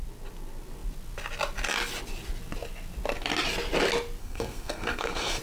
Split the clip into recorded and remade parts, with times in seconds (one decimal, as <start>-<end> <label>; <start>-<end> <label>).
0.0-4.2 recorded; 4.2-5.4 remade